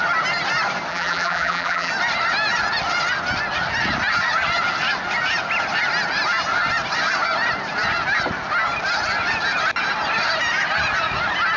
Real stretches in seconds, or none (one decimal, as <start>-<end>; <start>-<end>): 0.0-0.9; 1.9-11.6